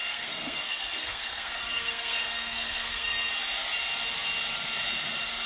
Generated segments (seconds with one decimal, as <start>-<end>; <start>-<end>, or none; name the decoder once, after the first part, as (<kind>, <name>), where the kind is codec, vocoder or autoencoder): 0.0-3.3 (codec, SNAC)